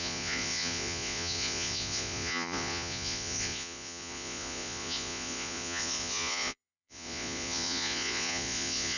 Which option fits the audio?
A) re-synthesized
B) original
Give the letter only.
A